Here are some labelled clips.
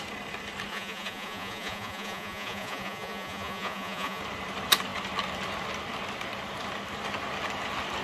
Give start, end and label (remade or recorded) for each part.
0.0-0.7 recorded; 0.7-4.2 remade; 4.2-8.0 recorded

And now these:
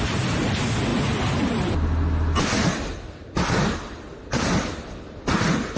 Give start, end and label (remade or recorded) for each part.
0.0-5.8 recorded

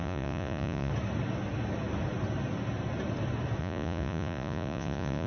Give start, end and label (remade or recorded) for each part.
0.0-0.9 remade; 0.9-3.6 recorded; 3.6-5.3 remade